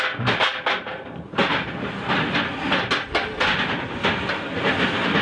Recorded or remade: recorded